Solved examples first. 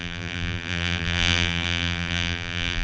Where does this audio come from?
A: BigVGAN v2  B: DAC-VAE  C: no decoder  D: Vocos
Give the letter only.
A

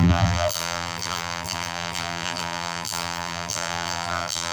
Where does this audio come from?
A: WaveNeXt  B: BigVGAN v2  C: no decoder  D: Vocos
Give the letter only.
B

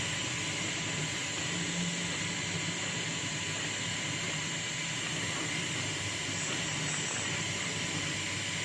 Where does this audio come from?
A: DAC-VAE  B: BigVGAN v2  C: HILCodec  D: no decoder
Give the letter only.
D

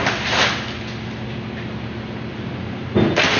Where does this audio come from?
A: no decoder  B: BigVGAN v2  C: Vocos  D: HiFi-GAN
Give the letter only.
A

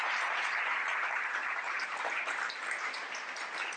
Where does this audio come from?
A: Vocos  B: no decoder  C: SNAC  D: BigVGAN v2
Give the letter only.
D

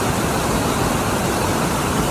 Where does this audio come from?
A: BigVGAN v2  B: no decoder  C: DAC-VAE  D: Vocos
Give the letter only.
B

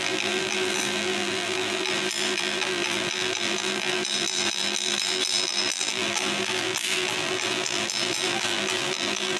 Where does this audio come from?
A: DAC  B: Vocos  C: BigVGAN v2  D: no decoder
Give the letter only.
C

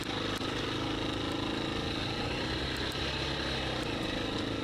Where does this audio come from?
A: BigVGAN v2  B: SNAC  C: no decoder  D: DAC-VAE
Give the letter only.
C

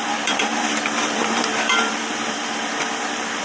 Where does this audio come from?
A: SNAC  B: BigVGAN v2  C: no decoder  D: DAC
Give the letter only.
B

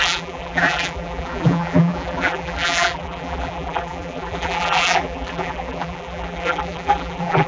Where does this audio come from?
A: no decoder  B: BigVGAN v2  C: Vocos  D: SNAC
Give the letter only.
B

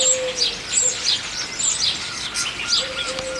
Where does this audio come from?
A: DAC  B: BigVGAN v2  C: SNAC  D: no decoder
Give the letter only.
D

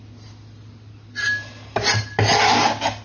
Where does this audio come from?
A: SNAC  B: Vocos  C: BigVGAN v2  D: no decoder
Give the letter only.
D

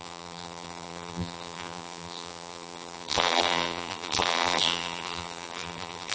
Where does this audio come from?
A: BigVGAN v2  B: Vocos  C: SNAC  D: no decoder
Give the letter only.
A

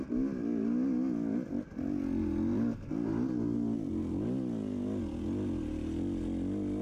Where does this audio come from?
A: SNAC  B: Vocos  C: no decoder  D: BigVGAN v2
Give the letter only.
C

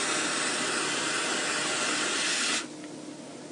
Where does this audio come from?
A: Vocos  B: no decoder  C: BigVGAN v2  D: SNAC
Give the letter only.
B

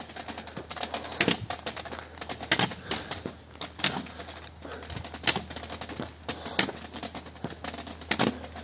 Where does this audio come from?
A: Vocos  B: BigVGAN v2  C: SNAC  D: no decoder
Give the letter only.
D